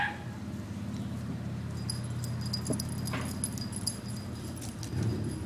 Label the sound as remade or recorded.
recorded